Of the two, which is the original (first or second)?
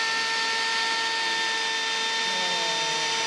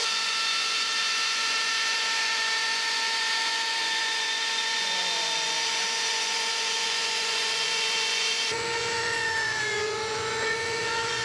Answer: first